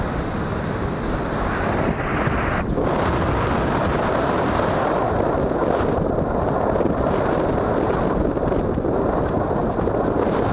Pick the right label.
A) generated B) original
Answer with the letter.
B